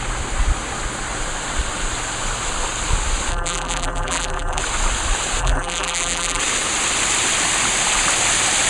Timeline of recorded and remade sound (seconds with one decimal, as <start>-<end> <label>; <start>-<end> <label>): 0.0-3.3 recorded; 3.3-4.6 remade; 4.6-5.4 recorded; 5.4-6.4 remade; 6.4-8.7 recorded